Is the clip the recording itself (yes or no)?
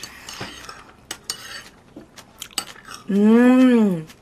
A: yes